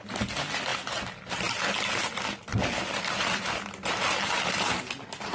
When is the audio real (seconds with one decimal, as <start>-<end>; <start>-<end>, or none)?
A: 0.0-0.7; 1.9-2.5; 4.8-5.3